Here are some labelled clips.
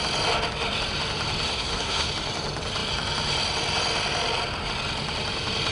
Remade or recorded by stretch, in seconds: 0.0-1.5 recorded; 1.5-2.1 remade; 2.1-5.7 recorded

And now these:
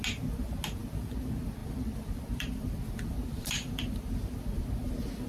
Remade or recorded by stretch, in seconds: 0.0-1.6 recorded; 1.6-2.7 remade; 2.7-3.1 recorded; 3.1-4.6 remade; 4.6-5.3 recorded

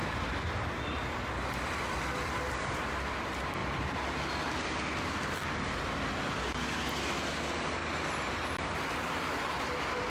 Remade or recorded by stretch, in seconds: 0.0-10.1 recorded

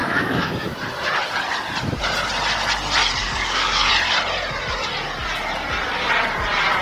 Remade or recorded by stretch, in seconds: 0.0-0.7 remade; 0.7-3.2 recorded; 3.2-3.9 remade; 3.9-6.8 recorded

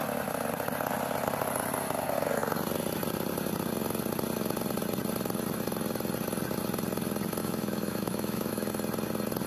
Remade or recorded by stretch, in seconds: 0.0-7.4 recorded; 7.4-8.7 remade; 8.7-9.5 recorded

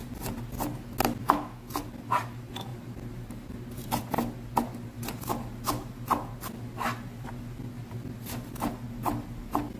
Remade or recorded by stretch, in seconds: 0.0-1.2 recorded; 1.2-1.7 remade; 1.7-9.8 recorded

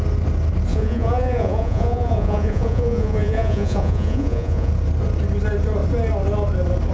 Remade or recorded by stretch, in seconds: 0.0-0.7 recorded; 0.7-4.7 remade; 4.7-6.9 recorded